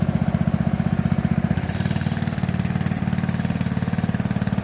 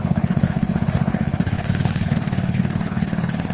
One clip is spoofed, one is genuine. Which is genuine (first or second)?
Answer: first